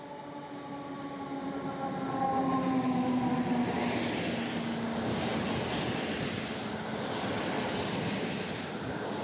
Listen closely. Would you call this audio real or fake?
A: real